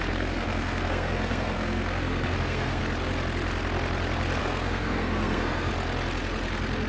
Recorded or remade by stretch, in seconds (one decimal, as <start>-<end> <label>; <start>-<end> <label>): 0.0-2.8 remade; 2.8-4.4 recorded; 4.4-5.7 remade; 5.7-6.9 recorded